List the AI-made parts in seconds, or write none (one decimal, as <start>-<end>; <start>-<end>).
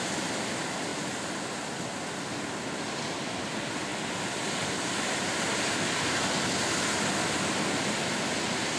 none